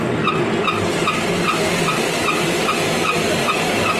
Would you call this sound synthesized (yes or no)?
no